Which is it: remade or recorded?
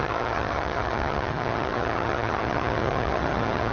remade